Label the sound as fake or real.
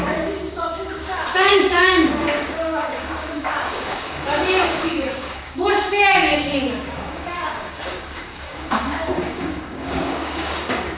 fake